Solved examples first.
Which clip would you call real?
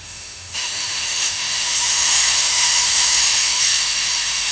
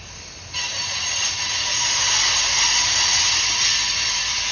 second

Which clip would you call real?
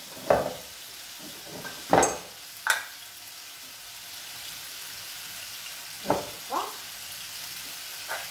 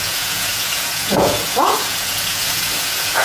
first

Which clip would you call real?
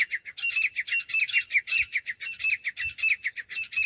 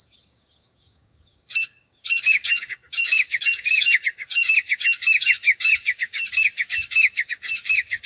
first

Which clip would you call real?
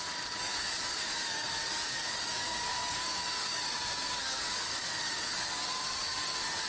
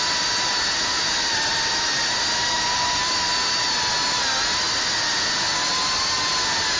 second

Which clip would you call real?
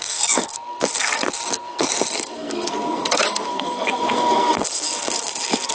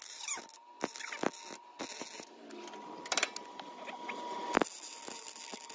second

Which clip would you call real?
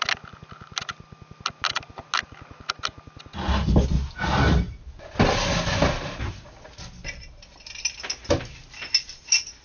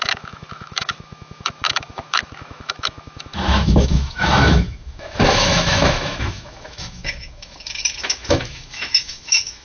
first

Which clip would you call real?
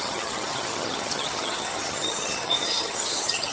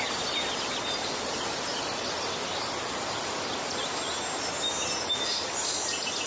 second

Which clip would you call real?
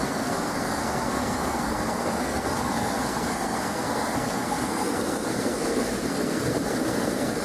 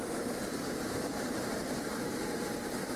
second